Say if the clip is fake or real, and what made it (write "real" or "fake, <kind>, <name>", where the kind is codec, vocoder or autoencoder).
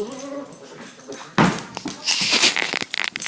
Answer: real